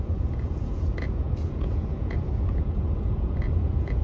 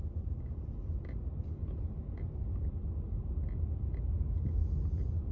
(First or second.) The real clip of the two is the second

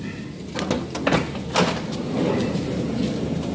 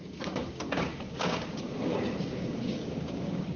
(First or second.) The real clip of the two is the first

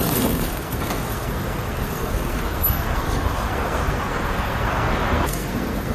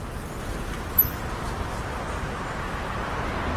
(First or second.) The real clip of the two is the second